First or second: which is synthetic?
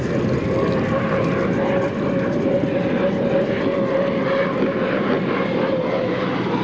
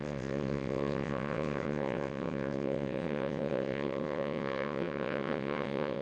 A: second